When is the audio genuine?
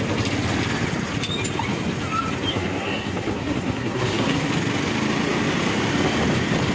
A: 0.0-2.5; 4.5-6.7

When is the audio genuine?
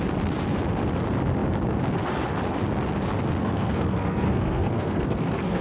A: 0.0-3.4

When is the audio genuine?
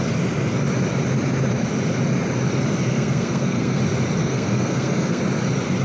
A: 0.0-2.9; 3.8-4.2; 5.2-5.8